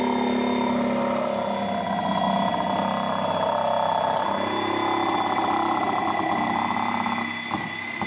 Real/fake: real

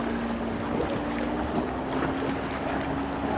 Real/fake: real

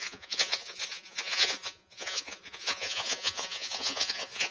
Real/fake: fake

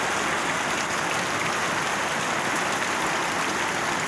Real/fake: real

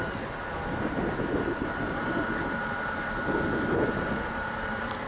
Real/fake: real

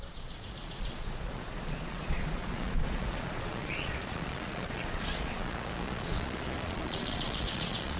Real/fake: fake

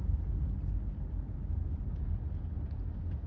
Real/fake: real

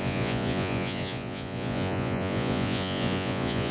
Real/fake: fake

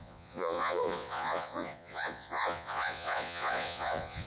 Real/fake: fake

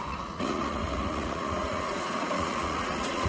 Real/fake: fake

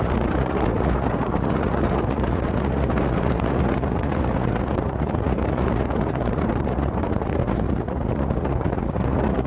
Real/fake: fake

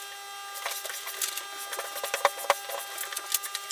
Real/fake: real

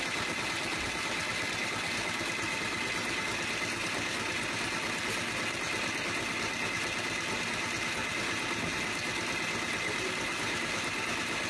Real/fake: real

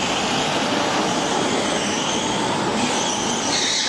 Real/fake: real